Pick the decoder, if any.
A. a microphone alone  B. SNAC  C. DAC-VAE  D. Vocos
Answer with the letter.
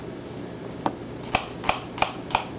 A